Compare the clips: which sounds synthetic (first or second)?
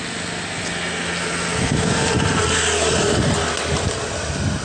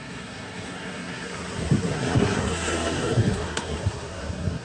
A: second